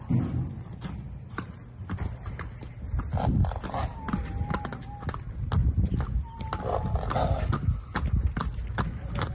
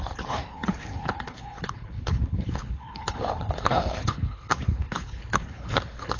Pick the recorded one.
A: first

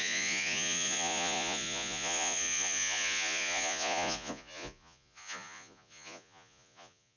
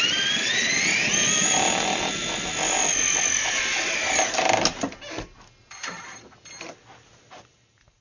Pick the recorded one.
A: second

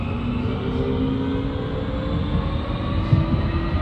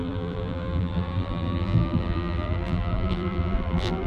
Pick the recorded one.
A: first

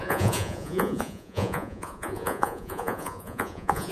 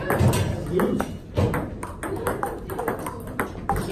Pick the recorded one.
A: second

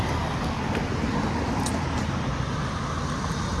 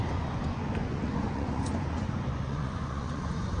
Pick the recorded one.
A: first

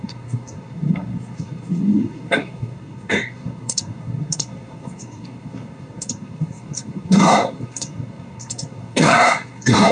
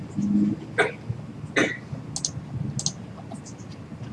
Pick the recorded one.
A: second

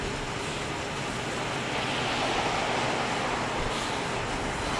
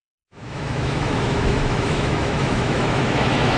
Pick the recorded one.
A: first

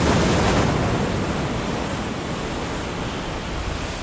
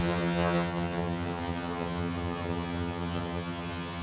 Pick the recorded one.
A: first